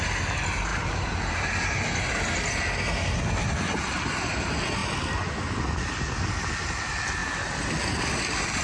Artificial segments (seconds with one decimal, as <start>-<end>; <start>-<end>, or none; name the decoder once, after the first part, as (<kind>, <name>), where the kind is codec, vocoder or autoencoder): none